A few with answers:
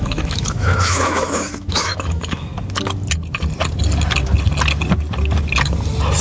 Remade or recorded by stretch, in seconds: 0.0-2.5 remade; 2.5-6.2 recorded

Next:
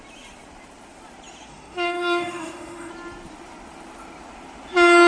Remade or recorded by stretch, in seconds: 0.0-1.5 recorded; 1.5-2.9 remade; 2.9-5.1 recorded

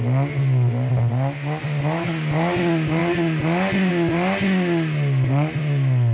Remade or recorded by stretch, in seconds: 0.0-6.1 recorded

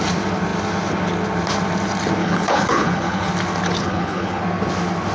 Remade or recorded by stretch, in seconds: 0.0-2.2 recorded; 2.2-3.3 remade; 3.3-3.8 recorded; 3.8-4.4 remade; 4.4-5.1 recorded

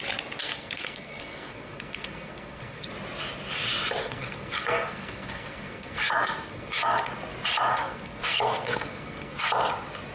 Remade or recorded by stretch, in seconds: 0.0-0.4 recorded; 0.4-2.9 remade; 2.9-4.0 recorded; 4.0-7.1 remade; 7.1-7.7 recorded; 7.7-9.5 remade; 9.5-10.1 recorded